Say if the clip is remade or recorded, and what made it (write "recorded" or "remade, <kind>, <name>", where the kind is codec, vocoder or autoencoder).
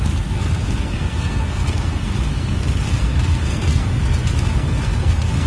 remade, codec, SNAC